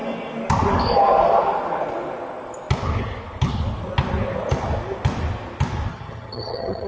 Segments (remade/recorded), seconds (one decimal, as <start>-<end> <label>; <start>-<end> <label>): 0.0-5.9 recorded; 5.9-6.9 remade